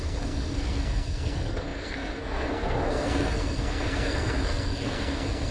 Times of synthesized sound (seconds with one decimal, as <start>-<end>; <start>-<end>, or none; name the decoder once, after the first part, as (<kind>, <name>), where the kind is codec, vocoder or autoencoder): 0.0-5.5 (codec, SNAC)